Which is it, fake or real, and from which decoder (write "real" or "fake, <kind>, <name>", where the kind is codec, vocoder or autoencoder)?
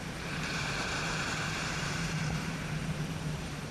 fake, vocoder, BigVGAN v2